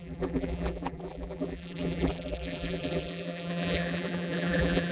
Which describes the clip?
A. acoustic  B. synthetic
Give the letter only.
B